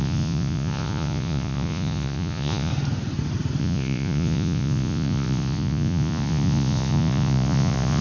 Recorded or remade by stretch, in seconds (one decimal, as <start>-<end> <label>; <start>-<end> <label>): 0.0-2.7 remade; 2.7-3.6 recorded; 3.6-8.0 remade